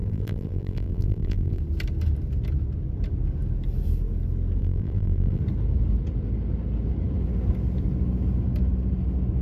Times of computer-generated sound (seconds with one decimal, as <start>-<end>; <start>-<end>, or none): 0.0-1.6; 4.6-5.4